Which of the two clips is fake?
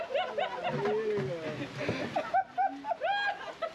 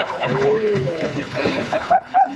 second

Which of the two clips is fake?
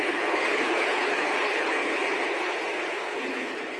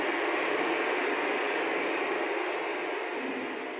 first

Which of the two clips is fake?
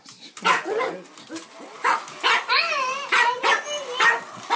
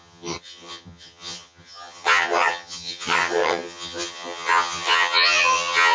second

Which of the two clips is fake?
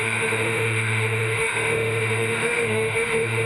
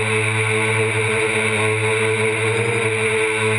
first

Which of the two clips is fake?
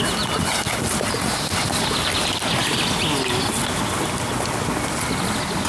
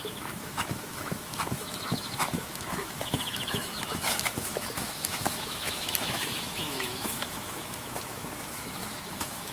second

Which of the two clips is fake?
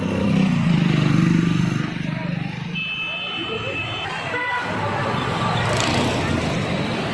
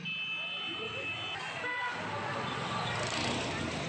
first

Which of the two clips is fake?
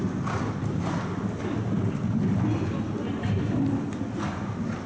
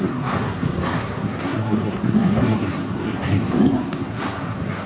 second